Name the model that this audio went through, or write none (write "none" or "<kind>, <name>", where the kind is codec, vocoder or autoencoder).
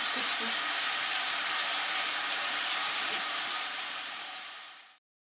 vocoder, BigVGAN v2